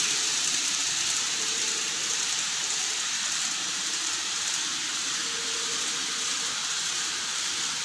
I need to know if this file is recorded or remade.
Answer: remade